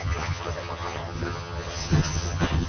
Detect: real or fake fake